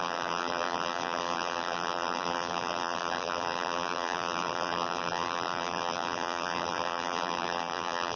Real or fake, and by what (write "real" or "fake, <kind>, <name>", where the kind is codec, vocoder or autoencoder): fake, vocoder, BigVGAN v2